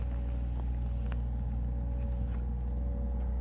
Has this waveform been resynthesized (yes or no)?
no